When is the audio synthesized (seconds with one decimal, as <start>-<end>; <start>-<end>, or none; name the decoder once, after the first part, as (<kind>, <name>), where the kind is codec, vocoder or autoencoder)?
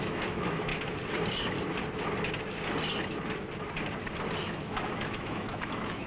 0.0-0.7 (autoencoder, DAC-VAE); 4.4-6.1